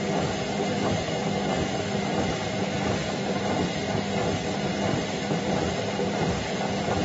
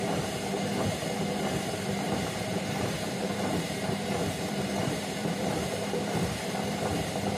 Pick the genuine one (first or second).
first